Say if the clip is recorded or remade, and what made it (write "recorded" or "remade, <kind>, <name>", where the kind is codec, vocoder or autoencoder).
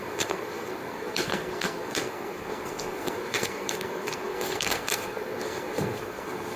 remade, codec, SNAC